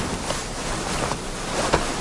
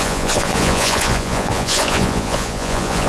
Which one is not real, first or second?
second